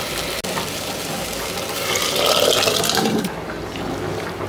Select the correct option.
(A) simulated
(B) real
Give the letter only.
B